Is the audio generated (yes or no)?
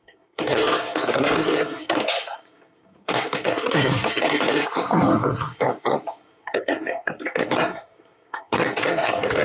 yes